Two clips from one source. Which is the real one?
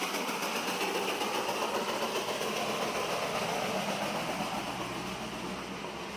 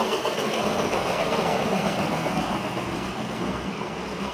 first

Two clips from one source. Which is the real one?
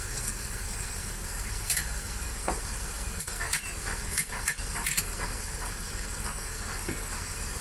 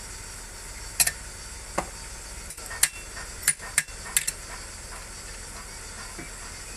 second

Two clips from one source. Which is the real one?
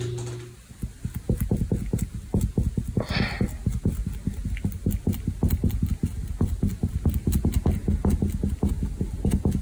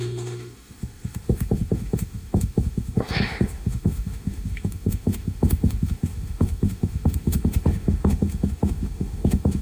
first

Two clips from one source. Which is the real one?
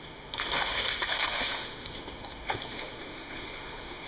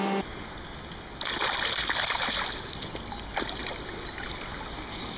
second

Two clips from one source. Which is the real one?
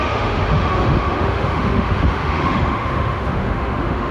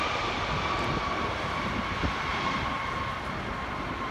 second